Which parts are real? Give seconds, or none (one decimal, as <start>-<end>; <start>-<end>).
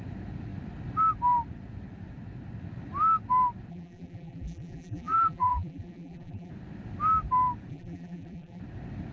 0.0-3.7; 6.5-7.7; 8.6-9.1